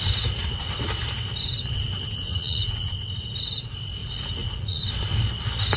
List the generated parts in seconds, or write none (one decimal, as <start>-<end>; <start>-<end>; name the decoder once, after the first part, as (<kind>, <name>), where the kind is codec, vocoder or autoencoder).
2.3-2.9 (vocoder, Vocos); 4.0-4.8